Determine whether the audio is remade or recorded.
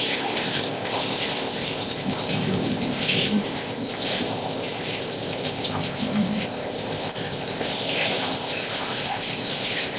remade